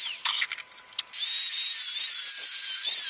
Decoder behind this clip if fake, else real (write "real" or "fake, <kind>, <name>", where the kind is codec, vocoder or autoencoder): real